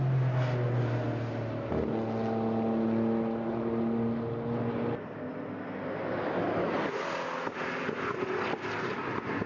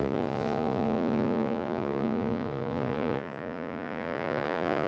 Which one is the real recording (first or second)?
first